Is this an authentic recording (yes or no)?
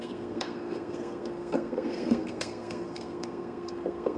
no